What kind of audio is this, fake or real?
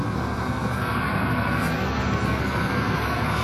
fake